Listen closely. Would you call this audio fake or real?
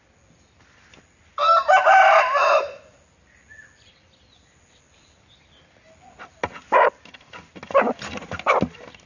real